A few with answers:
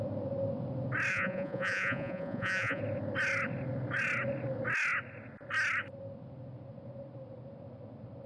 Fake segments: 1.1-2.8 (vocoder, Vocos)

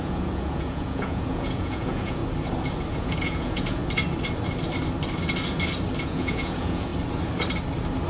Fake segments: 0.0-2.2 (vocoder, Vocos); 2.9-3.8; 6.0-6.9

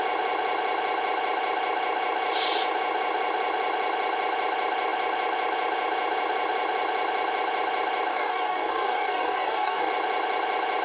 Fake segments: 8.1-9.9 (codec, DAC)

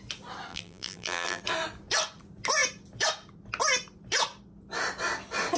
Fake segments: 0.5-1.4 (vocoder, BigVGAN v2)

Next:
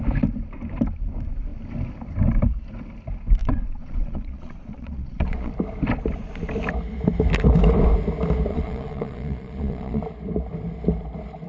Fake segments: 3.4-5.5 (vocoder, Vocos); 8.5-10.0

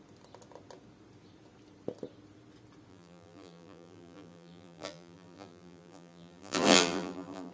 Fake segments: 2.9-7.5 (vocoder, BigVGAN v2)